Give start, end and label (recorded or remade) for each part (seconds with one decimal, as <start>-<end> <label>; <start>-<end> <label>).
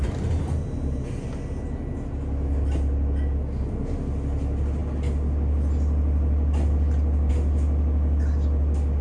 0.0-9.0 recorded